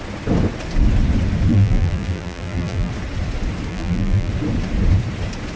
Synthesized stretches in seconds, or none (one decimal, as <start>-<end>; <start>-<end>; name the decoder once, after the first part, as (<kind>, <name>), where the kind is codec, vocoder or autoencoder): 1.5-2.9 (vocoder, BigVGAN v2); 3.7-4.3